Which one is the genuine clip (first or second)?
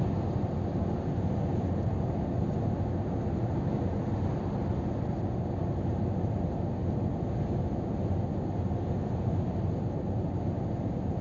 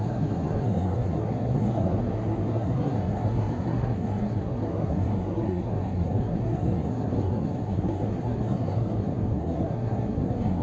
first